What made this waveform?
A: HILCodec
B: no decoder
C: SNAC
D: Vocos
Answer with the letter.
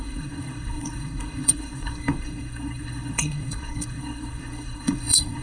C